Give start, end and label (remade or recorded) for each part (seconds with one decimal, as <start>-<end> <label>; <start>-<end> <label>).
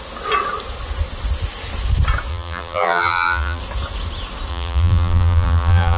0.0-2.3 recorded; 2.3-3.6 remade; 3.6-4.5 recorded; 4.5-6.0 remade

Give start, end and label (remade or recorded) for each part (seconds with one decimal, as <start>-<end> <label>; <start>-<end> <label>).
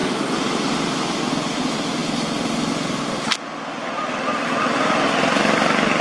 0.0-1.3 remade; 1.3-6.0 recorded